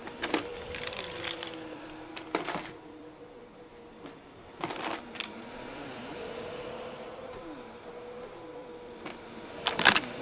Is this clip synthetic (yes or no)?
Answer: yes